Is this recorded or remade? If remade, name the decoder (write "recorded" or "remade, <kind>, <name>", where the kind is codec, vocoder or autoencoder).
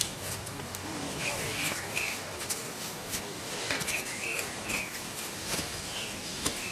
remade, codec, DAC